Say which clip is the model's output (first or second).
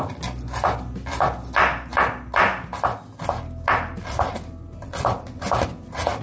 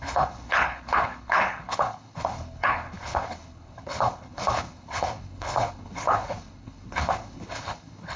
second